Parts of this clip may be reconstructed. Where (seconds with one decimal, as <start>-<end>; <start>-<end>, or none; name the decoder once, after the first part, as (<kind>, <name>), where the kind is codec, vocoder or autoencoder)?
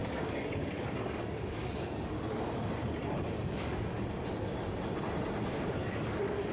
0.0-3.9 (codec, DAC); 5.8-6.5